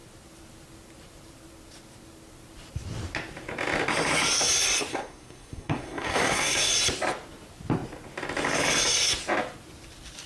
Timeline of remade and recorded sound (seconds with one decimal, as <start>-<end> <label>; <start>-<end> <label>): 0.0-4.9 recorded; 4.9-6.7 remade; 6.7-10.3 recorded